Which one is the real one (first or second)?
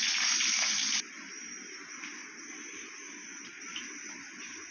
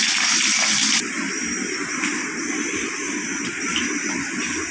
first